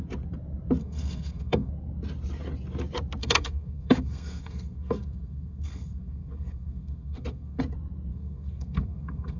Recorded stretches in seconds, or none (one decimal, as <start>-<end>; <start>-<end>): 0.0-0.8; 1.7-3.2; 7.6-8.1

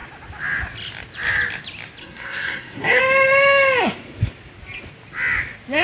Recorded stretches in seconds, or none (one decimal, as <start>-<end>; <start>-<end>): 0.0-2.0; 3.0-5.8

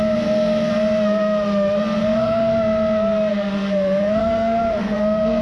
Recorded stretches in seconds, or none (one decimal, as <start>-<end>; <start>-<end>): 0.7-2.0; 2.5-3.3

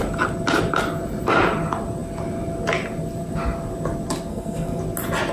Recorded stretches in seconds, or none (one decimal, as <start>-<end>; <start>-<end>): 0.0-4.3; 4.8-5.3

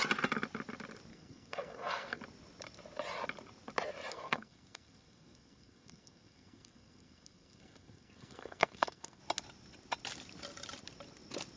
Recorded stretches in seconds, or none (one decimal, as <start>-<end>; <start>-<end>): 0.0-1.1; 2.2-4.1; 9.2-11.6

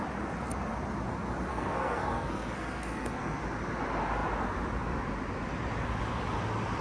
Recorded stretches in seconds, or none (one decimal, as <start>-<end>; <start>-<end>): 0.0-1.5; 3.4-6.8

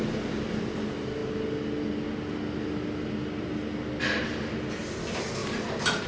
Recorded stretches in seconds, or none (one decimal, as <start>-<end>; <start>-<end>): 0.0-6.1

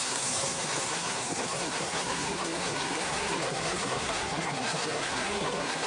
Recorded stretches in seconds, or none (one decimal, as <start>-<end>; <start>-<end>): none